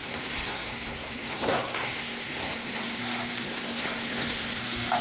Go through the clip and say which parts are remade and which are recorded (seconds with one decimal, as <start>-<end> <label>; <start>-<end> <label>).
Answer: 0.0-3.0 remade; 3.0-3.4 recorded; 3.4-4.6 remade; 4.6-5.0 recorded